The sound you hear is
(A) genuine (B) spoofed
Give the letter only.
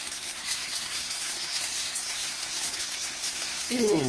B